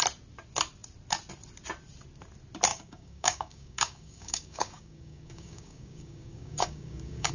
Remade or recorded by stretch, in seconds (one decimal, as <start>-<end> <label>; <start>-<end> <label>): 0.0-2.7 recorded; 2.7-7.3 remade